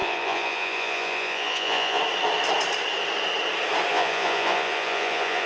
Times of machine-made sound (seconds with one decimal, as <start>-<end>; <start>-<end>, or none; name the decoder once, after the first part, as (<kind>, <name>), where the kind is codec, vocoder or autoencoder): 0.0-2.0 (vocoder, Vocos); 3.9-5.5